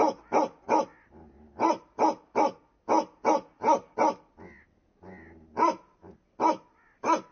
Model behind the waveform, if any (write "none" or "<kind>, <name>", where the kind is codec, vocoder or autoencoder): none